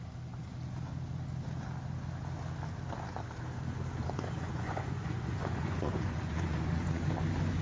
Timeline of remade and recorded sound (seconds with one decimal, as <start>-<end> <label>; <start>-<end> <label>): 0.0-4.0 recorded; 4.0-7.1 remade; 7.1-7.6 recorded